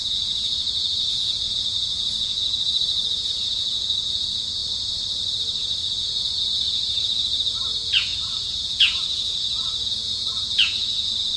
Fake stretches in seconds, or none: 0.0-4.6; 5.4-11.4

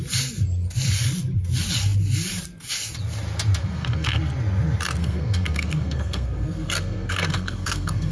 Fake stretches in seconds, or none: 3.6-4.2; 5.0-8.1

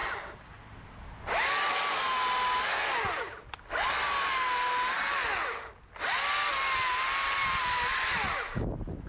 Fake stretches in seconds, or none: none

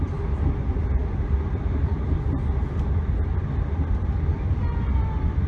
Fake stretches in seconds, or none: none

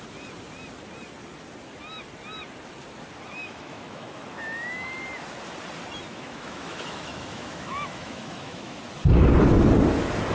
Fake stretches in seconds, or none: 3.4-4.9; 6.1-8.8